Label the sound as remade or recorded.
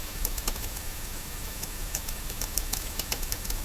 remade